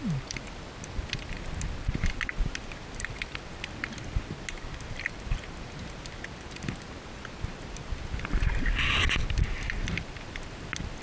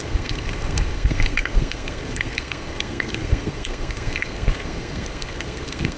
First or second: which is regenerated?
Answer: second